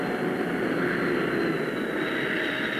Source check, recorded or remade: recorded